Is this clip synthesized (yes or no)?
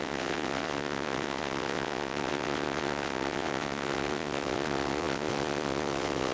yes